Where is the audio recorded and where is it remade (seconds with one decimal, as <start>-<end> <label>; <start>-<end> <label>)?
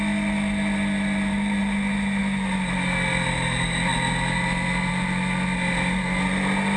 0.0-6.8 recorded